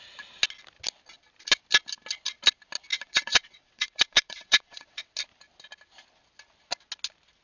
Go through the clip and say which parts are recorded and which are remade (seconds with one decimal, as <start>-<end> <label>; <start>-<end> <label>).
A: 0.0-2.9 recorded; 2.9-5.1 remade; 5.1-7.4 recorded